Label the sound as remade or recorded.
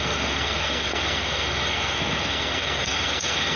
remade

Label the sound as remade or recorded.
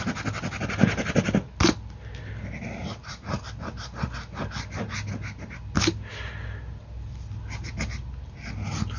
recorded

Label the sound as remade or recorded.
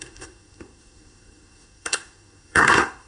remade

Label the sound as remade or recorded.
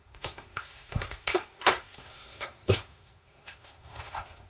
remade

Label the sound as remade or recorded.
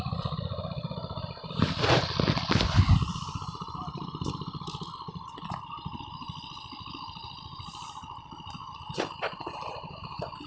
recorded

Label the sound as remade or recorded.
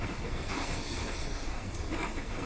remade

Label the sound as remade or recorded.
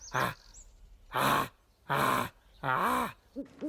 recorded